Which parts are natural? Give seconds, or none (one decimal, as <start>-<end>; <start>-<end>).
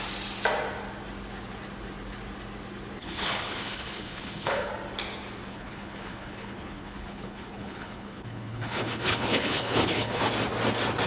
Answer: 0.0-3.0; 4.7-5.5; 10.3-11.1